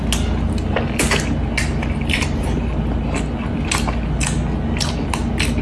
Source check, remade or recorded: recorded